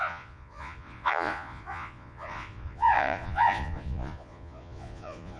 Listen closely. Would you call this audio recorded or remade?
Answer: remade